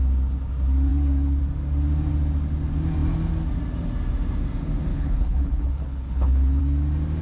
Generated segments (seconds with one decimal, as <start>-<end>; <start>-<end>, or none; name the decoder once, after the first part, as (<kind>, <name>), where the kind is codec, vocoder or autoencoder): 4.9-6.6 (codec, HILCodec)